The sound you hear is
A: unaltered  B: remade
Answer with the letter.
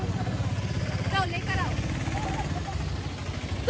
A